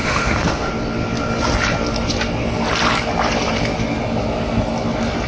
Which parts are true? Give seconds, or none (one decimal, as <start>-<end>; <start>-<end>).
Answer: 0.7-5.3